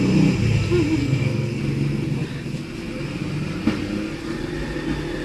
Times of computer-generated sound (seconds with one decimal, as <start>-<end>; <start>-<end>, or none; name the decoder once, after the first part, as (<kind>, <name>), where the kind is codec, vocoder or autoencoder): 1.0-1.6 (codec, SNAC)